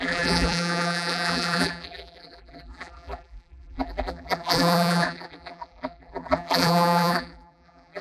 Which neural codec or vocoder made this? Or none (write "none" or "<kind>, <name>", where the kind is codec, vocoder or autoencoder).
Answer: vocoder, BigVGAN v2